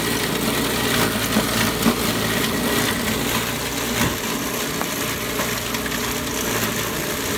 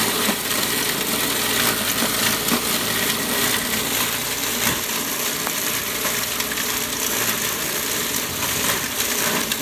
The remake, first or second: second